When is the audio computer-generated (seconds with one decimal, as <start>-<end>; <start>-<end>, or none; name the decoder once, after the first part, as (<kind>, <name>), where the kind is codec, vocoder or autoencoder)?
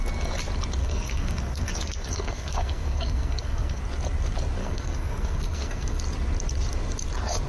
0.8-3.8 (codec, SNAC); 4.6-6.0